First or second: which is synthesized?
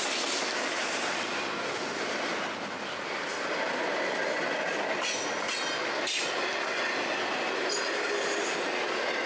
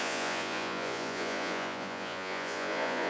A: second